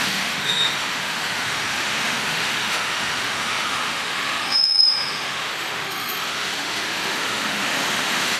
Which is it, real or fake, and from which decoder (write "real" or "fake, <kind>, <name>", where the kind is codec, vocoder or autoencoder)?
fake, autoencoder, DAC-VAE